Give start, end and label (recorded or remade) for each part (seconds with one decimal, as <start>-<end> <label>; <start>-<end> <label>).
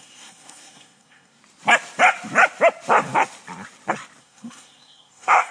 0.0-1.4 remade; 1.4-4.2 recorded; 4.2-5.5 remade